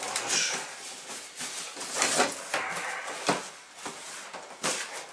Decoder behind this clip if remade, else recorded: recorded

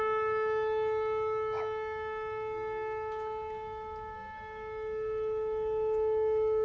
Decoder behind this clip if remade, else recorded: recorded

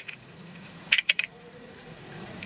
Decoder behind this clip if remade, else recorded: remade, vocoder, Vocos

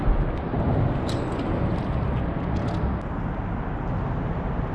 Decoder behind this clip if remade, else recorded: recorded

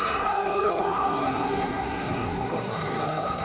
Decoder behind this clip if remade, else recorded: remade, codec, SNAC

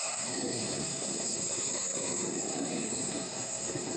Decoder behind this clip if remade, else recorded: remade, codec, SNAC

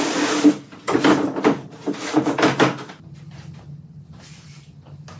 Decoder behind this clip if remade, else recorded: recorded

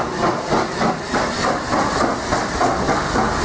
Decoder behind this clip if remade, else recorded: recorded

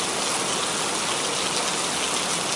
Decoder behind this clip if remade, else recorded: recorded